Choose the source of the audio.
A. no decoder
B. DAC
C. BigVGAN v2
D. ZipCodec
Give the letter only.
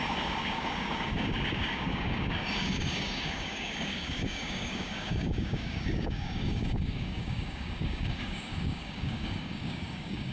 B